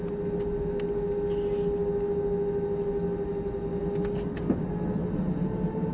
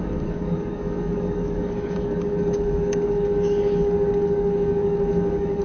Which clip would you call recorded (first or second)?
first